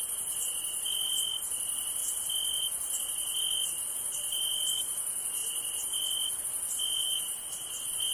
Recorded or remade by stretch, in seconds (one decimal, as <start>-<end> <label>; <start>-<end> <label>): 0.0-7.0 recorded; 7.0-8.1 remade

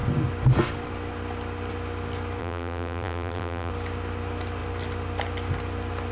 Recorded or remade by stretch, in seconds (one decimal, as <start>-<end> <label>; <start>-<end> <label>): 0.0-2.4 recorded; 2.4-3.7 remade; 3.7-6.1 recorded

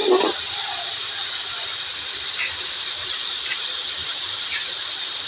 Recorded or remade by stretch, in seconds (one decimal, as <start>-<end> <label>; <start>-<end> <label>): 0.0-5.3 remade

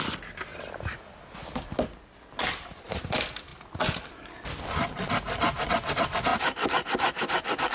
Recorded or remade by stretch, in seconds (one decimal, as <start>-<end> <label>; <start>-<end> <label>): 0.0-0.5 recorded; 0.5-1.0 remade; 1.0-6.3 recorded; 6.3-7.7 remade